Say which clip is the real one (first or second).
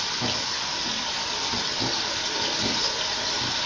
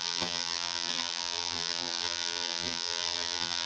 first